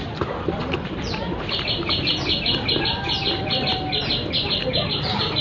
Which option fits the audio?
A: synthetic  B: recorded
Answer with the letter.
B